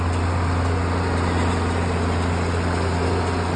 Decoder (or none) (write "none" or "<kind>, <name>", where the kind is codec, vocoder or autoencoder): none